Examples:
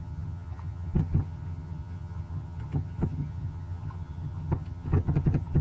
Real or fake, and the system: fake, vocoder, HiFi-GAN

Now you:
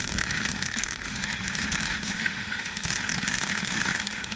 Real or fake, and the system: fake, autoencoder, DAC-VAE